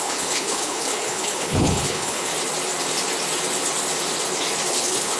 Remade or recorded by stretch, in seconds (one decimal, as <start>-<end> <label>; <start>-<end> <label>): 0.0-2.3 remade; 2.3-4.7 recorded; 4.7-5.2 remade